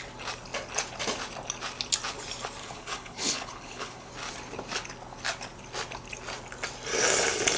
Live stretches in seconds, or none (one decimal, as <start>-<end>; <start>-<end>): 0.0-2.6; 4.1-7.6